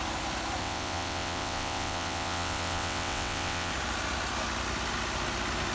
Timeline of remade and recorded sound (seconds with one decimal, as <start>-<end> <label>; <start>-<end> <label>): 0.0-0.6 recorded; 0.6-3.7 remade; 3.7-5.7 recorded